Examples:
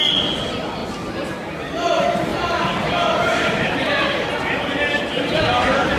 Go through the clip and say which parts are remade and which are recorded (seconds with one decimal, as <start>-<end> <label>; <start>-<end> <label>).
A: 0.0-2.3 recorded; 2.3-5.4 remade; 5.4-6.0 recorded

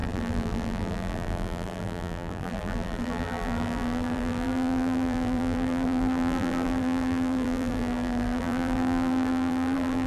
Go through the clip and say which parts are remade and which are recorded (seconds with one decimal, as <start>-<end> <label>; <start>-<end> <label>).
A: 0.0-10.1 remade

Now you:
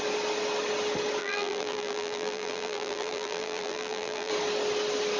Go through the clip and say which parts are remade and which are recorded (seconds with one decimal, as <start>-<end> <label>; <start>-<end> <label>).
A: 0.0-1.2 recorded; 1.2-4.3 remade; 4.3-5.2 recorded

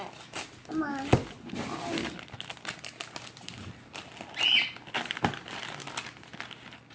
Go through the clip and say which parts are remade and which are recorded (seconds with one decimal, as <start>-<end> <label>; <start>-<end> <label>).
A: 0.0-6.9 recorded

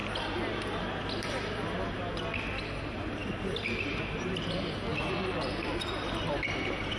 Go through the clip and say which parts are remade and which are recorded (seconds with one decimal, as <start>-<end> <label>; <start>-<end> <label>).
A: 0.0-3.2 recorded; 3.2-3.7 remade; 3.7-4.9 recorded; 4.9-6.1 remade; 6.1-7.0 recorded

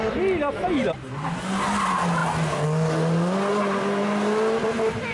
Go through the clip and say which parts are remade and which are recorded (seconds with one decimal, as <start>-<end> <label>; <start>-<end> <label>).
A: 0.0-5.1 recorded

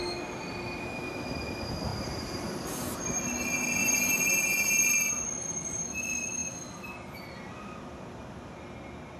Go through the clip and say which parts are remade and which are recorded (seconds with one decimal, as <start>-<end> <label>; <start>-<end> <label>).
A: 0.0-1.9 recorded; 1.9-3.2 remade; 3.2-3.8 recorded; 3.8-4.8 remade; 4.8-9.2 recorded